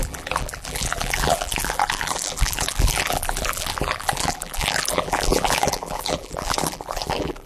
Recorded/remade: remade